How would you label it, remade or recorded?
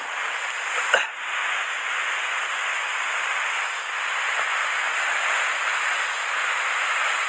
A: recorded